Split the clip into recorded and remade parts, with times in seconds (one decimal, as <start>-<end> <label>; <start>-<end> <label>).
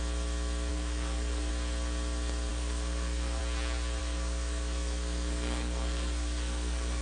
0.0-0.7 recorded; 0.7-1.5 remade; 1.5-2.5 recorded; 2.5-3.4 remade; 3.4-4.0 recorded; 4.0-7.0 remade